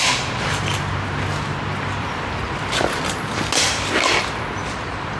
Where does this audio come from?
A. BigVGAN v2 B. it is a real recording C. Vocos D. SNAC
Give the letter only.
A